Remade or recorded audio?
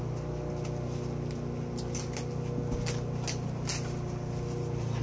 recorded